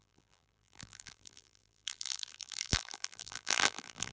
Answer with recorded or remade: remade